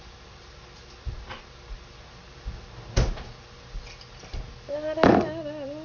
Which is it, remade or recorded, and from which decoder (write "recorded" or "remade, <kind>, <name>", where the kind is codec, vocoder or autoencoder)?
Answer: recorded